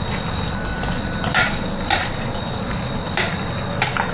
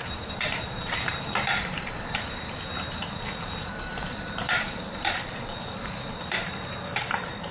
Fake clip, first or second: second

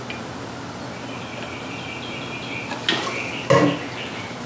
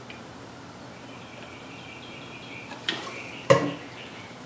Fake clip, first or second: second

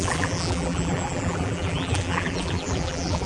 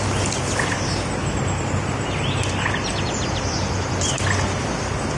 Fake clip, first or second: first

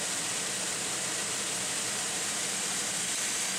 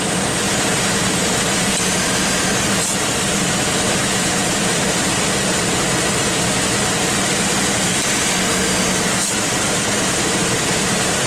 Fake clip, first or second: first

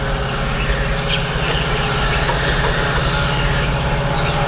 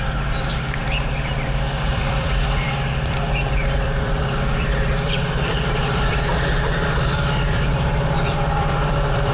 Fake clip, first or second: second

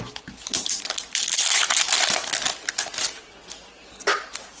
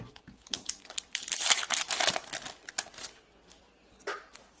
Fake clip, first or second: second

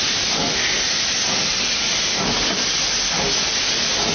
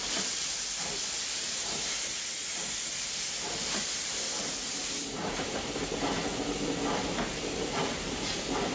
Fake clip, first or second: second